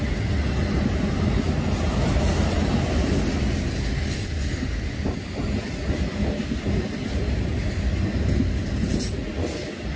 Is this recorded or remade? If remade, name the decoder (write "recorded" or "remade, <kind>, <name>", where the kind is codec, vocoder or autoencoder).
recorded